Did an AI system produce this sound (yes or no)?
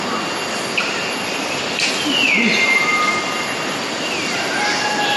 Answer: no